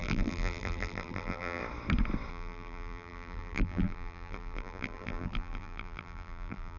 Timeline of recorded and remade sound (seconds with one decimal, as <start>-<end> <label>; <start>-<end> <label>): 0.0-1.6 remade; 1.6-2.3 recorded; 2.3-6.8 remade